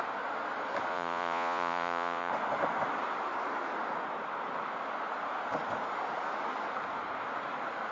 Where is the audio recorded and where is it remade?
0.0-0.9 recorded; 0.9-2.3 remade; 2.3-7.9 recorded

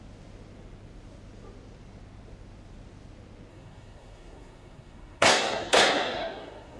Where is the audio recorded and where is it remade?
0.0-3.5 recorded; 3.5-6.8 remade

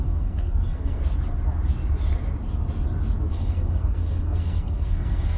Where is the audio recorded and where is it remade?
0.0-1.0 remade; 1.0-3.3 recorded; 3.3-5.4 remade

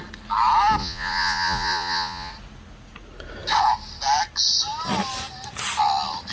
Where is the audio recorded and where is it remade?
0.0-0.8 recorded; 0.8-2.3 remade; 2.3-6.3 recorded

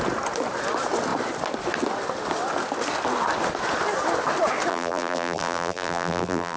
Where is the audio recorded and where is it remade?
0.0-4.7 recorded; 4.7-6.6 remade